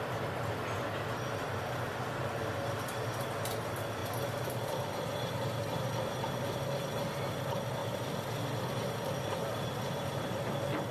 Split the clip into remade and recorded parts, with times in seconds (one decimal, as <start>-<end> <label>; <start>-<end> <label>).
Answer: 0.0-10.9 recorded